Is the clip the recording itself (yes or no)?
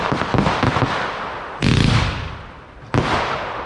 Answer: no